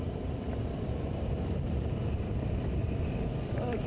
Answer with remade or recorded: remade